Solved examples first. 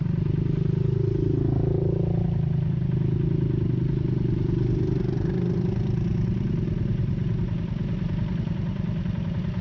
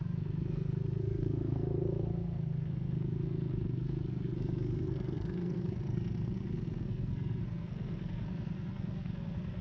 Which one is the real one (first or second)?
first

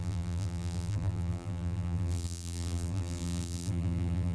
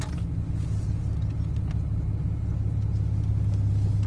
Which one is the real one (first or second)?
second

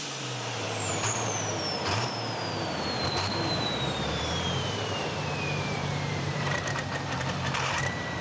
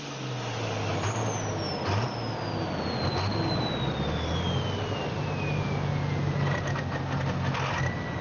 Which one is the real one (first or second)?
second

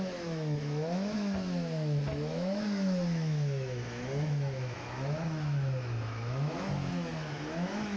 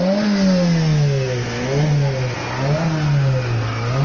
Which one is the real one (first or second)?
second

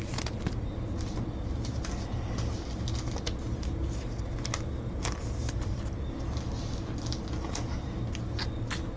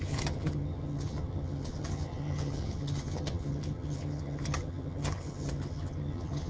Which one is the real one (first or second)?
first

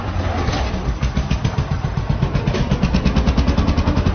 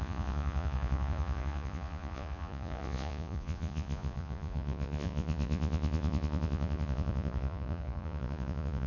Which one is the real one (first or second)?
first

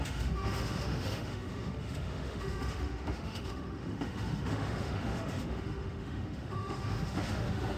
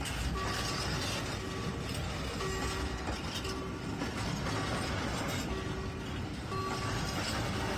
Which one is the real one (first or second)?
second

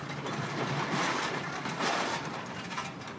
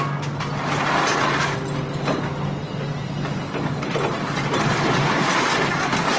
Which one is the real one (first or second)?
second